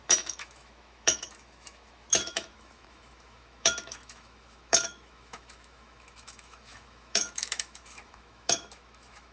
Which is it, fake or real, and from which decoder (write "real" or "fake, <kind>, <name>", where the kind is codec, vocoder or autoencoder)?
fake, autoencoder, DAC-VAE